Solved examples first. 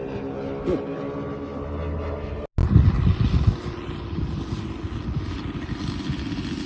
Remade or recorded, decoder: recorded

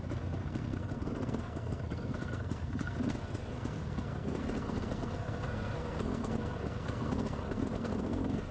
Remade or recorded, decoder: remade, codec, SNAC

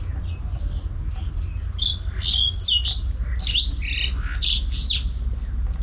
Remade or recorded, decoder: recorded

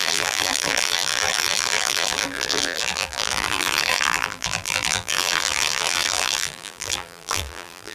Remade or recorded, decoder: remade, vocoder, BigVGAN v2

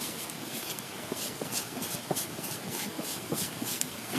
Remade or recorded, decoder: remade, codec, SNAC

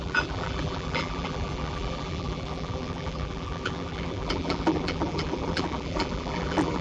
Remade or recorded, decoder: remade, vocoder, BigVGAN v2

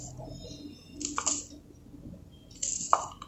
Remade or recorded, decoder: recorded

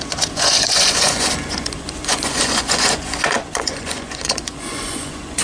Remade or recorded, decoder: remade, vocoder, Vocos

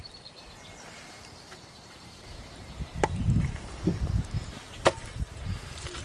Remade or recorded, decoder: remade, vocoder, BigVGAN v2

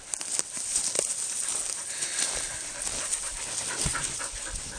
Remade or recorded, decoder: recorded